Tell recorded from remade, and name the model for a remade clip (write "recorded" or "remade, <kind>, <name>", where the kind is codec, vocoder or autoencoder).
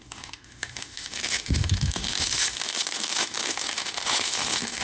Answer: remade, autoencoder, DAC-VAE